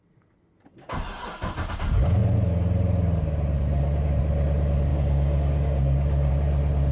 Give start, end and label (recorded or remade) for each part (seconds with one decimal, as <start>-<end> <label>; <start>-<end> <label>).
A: 0.0-4.9 recorded; 4.9-6.3 remade; 6.3-6.9 recorded